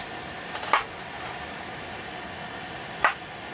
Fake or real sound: real